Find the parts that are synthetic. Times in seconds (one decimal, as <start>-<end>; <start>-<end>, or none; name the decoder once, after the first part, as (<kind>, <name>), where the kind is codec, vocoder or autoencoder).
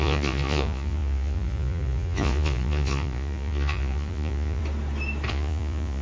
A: 0.0-4.6 (vocoder, Vocos); 5.3-6.0